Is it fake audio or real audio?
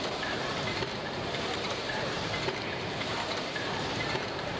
fake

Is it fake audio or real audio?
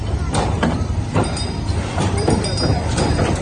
fake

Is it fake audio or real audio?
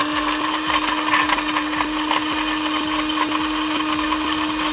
real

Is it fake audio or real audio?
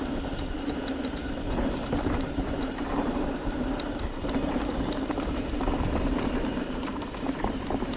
fake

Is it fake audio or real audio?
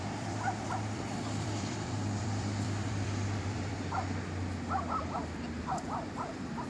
fake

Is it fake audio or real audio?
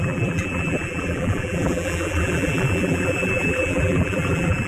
fake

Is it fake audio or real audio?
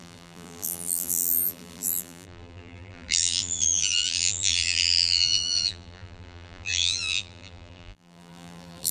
fake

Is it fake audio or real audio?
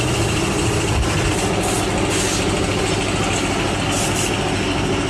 real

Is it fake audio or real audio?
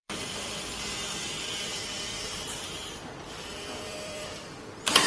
fake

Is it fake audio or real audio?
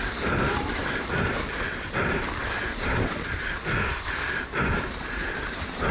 fake